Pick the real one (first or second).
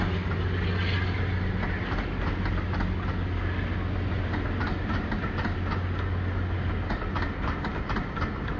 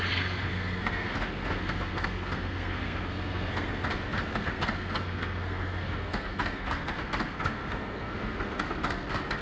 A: first